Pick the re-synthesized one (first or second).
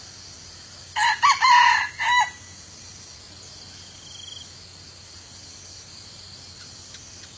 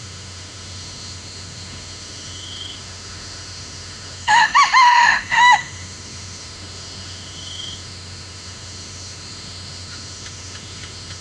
second